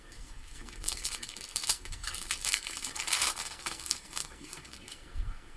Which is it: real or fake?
fake